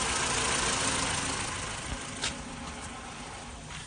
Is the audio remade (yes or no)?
no